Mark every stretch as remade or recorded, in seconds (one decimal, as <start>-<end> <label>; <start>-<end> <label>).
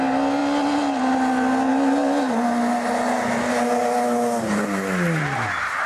0.0-5.9 recorded